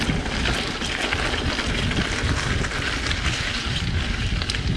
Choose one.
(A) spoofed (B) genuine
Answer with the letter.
B